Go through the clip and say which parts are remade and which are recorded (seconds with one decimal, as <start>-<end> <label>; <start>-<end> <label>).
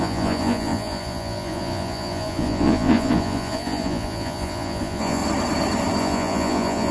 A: 0.0-5.2 remade; 5.2-6.0 recorded; 6.0-6.9 remade